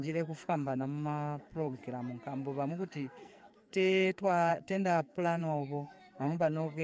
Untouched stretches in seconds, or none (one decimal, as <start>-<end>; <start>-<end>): 1.8-2.7